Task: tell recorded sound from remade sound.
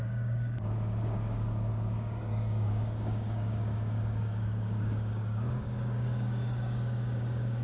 remade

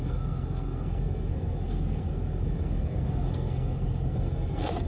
remade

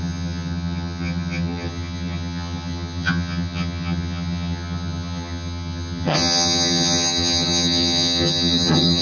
remade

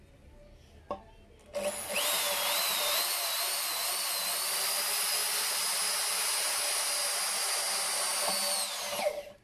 recorded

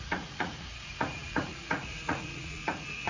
remade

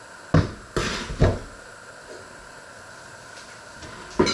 recorded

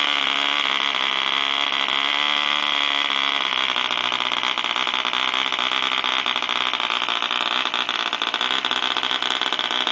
recorded